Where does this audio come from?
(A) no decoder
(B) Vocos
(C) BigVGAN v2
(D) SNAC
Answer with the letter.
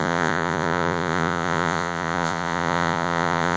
B